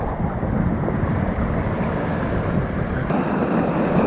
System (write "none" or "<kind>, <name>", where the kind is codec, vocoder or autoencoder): none